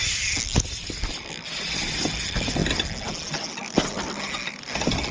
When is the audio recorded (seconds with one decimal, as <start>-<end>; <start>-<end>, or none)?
0.0-5.1